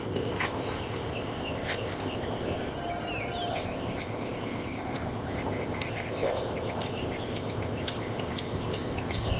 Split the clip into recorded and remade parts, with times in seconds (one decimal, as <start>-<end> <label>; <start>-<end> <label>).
0.0-2.7 remade; 2.7-3.5 recorded; 3.5-9.4 remade

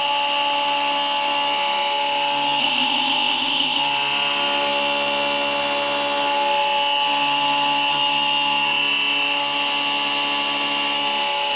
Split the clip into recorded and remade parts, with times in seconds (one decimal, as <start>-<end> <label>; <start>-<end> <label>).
0.0-2.6 recorded; 2.6-3.8 remade; 3.8-11.6 recorded

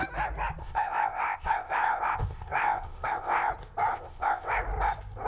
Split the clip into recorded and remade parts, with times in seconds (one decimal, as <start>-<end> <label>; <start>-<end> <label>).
0.0-0.6 recorded; 0.6-3.5 remade; 3.5-3.9 recorded; 3.9-4.5 remade; 4.5-5.3 recorded

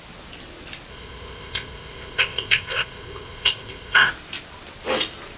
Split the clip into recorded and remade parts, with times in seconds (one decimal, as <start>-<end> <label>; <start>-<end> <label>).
0.0-0.9 recorded; 0.9-4.1 remade; 4.1-5.4 recorded

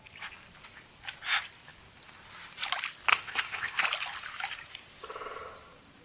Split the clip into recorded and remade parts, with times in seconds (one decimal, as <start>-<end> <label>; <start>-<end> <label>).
0.0-3.1 recorded; 3.1-3.8 remade; 3.8-6.0 recorded

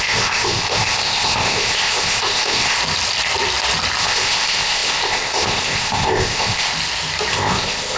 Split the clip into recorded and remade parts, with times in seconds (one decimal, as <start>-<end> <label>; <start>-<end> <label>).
0.0-2.8 remade; 2.8-4.0 recorded; 4.0-6.7 remade; 6.7-7.3 recorded; 7.3-8.0 remade

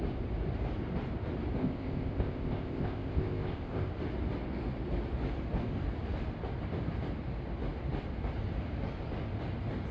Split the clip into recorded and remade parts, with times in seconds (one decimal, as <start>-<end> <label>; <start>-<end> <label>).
0.0-1.6 recorded; 1.6-3.9 remade; 3.9-9.9 recorded